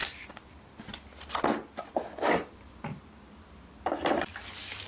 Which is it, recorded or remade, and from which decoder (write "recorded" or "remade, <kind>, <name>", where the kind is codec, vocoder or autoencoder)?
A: recorded